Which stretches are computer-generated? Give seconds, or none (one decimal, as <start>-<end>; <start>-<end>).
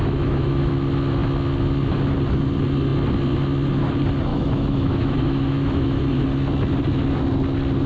0.0-0.7; 4.3-6.0